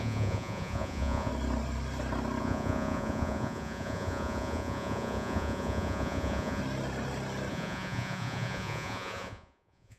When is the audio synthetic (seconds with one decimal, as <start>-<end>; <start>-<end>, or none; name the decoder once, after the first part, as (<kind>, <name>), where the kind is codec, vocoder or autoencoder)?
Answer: 0.0-1.3 (vocoder, Vocos); 2.4-6.6; 7.5-10.0